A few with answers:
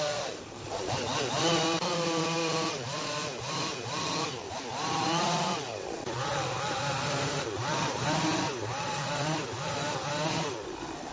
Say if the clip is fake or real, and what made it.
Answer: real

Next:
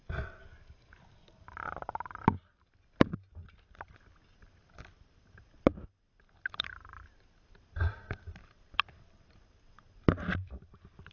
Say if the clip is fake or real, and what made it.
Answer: real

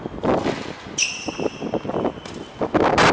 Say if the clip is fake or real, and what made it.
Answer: real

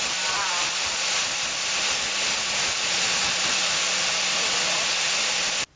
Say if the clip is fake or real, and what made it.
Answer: real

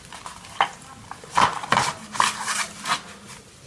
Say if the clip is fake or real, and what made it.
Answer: fake, vocoder, BigVGAN v2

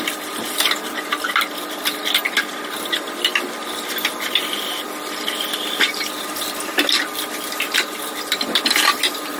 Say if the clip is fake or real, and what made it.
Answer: real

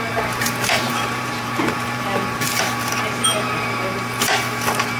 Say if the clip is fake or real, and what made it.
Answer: fake, vocoder, BigVGAN v2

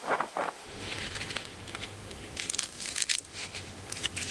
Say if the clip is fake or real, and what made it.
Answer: fake, autoencoder, DAC-VAE